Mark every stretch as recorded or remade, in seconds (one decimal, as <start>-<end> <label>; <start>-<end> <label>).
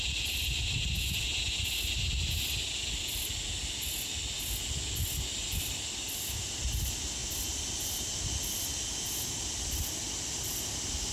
0.0-11.1 recorded